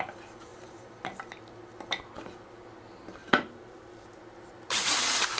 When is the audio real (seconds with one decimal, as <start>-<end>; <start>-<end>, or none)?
0.0-0.5; 1.0-3.2; 5.0-5.4